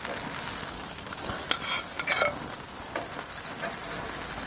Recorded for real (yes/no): yes